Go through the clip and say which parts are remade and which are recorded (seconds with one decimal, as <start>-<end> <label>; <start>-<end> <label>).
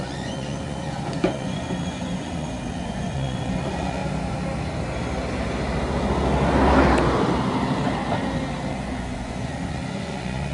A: 0.0-4.0 remade; 4.0-8.7 recorded; 8.7-10.5 remade